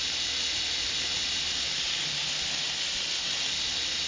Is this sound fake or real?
real